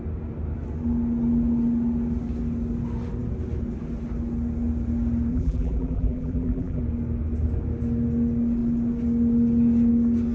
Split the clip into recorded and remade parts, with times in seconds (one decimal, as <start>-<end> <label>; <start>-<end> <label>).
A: 0.0-5.3 recorded; 5.3-6.8 remade; 6.8-10.3 recorded